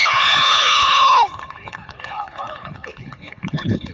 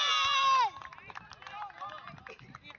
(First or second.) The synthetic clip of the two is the first